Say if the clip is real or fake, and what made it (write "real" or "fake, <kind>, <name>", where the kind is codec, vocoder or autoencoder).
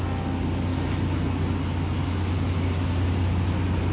real